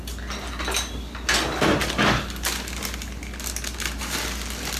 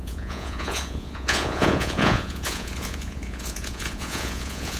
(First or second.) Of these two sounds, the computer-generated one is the second